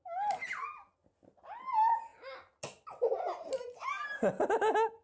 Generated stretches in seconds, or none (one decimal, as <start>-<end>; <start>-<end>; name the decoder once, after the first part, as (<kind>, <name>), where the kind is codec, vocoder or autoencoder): none